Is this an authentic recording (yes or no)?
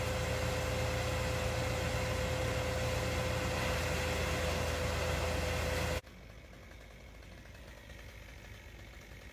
yes